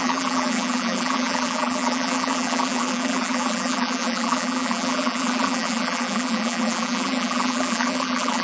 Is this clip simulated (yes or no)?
yes